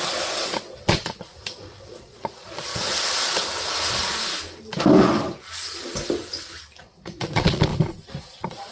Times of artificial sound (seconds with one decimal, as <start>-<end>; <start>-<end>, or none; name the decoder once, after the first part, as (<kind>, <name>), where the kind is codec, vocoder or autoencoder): 0.0-2.7 (vocoder, Vocos); 6.8-7.7; 8.2-8.7